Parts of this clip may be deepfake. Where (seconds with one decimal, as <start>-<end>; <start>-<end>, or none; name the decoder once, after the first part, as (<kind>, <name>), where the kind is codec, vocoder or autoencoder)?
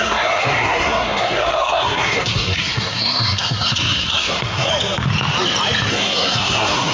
0.0-4.7 (codec, SNAC); 5.9-6.9